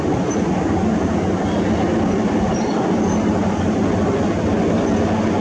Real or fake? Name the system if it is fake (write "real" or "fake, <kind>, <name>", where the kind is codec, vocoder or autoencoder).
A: real